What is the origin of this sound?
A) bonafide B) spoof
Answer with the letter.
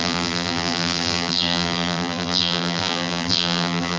B